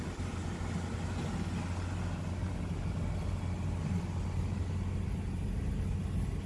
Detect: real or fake real